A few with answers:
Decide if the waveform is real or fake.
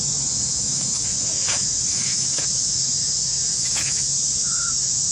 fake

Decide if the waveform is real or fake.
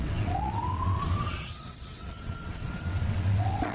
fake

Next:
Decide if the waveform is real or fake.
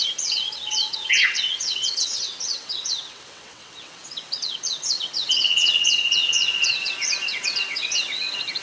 fake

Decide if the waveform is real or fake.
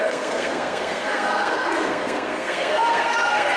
fake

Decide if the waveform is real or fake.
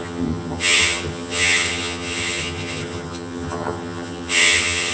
fake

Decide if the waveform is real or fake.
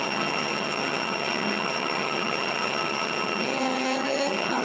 fake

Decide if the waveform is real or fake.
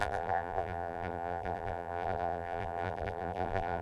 fake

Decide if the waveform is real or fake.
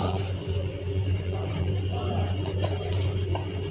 fake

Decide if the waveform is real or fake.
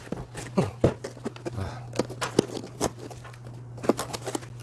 real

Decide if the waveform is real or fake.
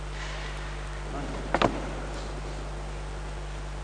real